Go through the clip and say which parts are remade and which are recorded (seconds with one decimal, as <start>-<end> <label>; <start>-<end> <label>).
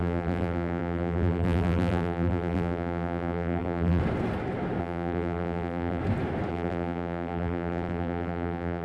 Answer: 0.0-4.0 remade; 4.0-4.8 recorded; 4.8-6.0 remade; 6.0-6.5 recorded; 6.5-8.8 remade